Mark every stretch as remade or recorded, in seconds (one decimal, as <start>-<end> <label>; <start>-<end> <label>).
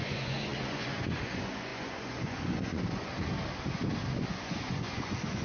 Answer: 0.0-3.1 remade; 3.1-4.3 recorded; 4.3-5.4 remade